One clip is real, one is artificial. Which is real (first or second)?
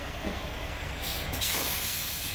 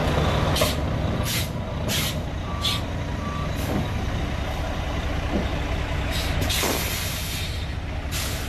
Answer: second